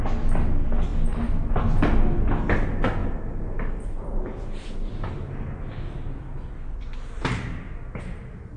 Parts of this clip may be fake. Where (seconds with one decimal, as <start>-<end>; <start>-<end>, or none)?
3.0-5.1